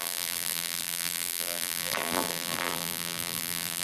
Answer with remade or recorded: remade